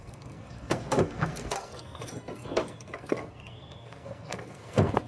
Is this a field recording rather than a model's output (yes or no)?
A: no